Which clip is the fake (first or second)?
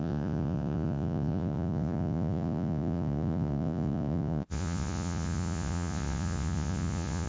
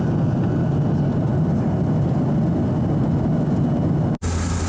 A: first